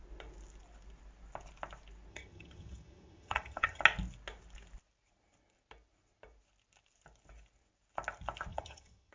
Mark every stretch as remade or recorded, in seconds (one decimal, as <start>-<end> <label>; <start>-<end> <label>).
0.0-2.1 recorded; 2.1-3.8 remade; 3.8-8.5 recorded; 8.5-9.1 remade

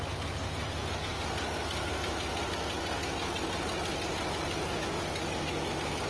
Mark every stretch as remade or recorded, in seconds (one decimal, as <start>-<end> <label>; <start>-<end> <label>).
0.0-6.1 recorded

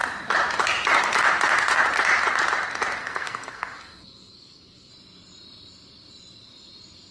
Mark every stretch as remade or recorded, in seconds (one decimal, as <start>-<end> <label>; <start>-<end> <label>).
0.0-3.0 recorded; 3.0-4.9 remade; 4.9-7.1 recorded

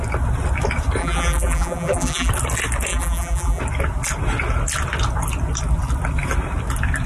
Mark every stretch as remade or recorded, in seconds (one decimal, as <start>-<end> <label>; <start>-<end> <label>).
0.0-1.0 recorded; 1.0-2.3 remade; 2.3-2.9 recorded; 2.9-3.6 remade; 3.6-7.1 recorded

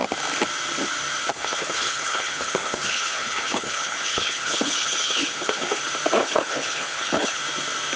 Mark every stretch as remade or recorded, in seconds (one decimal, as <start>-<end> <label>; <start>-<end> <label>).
0.0-1.3 recorded; 1.3-5.8 remade; 5.8-6.2 recorded; 6.2-7.4 remade; 7.4-8.0 recorded

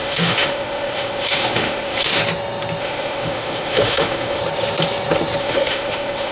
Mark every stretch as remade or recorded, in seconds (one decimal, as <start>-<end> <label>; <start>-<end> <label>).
0.0-2.2 remade; 2.2-2.8 recorded; 2.8-4.4 remade; 4.4-5.4 recorded; 5.4-6.3 remade